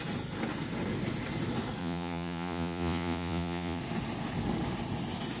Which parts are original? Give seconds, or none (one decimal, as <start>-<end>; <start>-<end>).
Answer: 0.0-1.8; 3.8-5.4